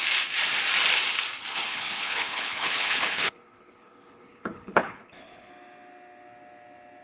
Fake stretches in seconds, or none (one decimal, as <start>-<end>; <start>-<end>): 1.5-5.5